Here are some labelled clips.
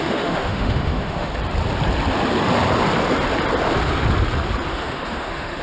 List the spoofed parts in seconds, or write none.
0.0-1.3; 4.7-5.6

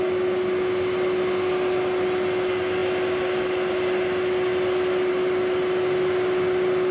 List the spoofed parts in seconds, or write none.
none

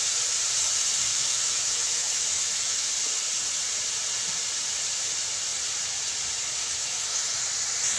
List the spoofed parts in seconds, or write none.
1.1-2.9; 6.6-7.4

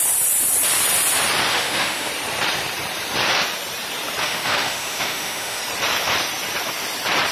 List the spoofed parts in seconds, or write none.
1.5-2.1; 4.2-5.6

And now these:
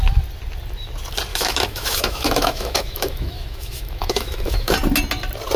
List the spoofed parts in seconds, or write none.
1.3-4.7